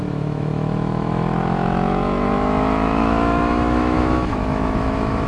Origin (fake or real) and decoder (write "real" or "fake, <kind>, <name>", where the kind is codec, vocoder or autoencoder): fake, autoencoder, DAC-VAE